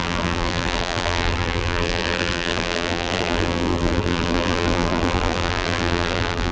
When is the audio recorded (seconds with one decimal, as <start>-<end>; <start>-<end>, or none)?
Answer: none

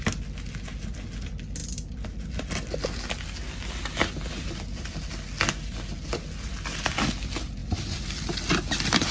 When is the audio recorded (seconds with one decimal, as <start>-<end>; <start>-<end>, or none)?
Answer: 0.0-7.6

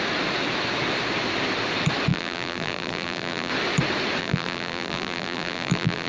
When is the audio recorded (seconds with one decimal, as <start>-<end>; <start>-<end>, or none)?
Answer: 0.0-2.1; 3.5-4.2

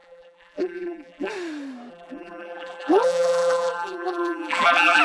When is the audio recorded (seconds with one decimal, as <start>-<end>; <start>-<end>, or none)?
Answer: 1.3-1.9

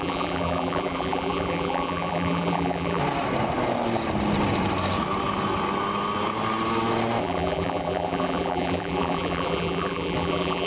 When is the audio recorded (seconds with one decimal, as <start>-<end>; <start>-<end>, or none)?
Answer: 3.0-7.2

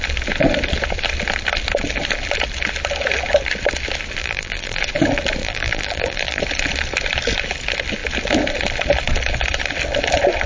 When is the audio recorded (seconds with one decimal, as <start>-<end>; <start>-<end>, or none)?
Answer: 0.0-4.2; 4.8-5.4; 6.4-10.5

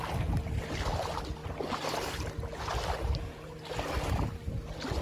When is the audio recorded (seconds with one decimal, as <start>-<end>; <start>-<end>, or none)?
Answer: 0.0-5.0